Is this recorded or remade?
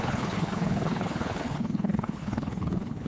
remade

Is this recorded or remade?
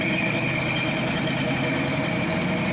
remade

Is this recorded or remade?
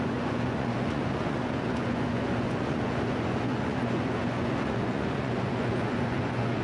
remade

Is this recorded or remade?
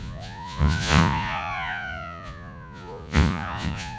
remade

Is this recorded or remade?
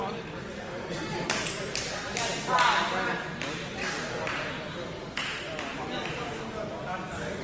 recorded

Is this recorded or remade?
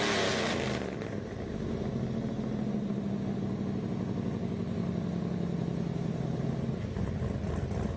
recorded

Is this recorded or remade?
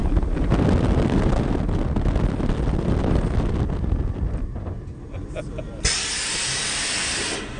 recorded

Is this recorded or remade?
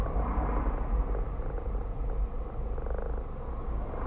recorded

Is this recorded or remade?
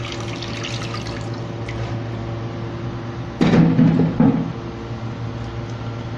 recorded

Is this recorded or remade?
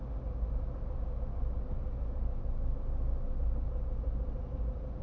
recorded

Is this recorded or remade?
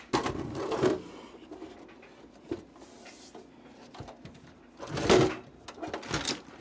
recorded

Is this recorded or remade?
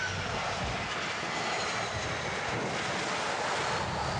recorded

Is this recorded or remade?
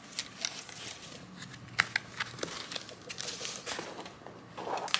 recorded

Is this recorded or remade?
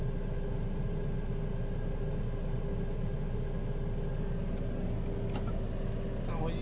recorded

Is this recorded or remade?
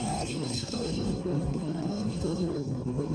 remade